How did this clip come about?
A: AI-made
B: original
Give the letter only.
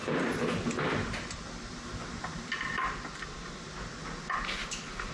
B